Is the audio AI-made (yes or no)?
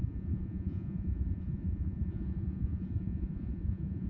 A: yes